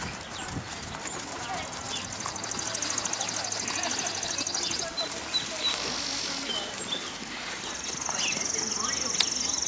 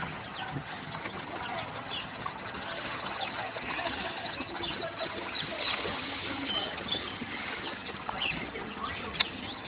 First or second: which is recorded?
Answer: first